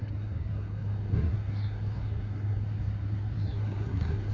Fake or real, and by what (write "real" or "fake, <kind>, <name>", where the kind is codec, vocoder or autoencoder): fake, codec, SNAC